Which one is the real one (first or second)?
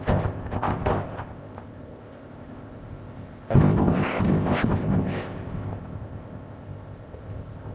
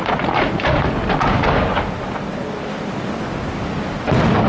second